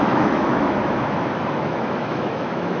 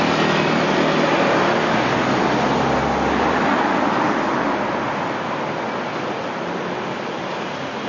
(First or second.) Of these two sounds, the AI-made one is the first